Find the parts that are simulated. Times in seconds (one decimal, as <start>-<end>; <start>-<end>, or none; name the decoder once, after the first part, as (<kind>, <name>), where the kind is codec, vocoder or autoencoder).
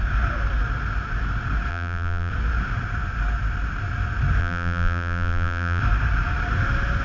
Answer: 1.7-2.3 (vocoder, BigVGAN v2); 4.4-5.8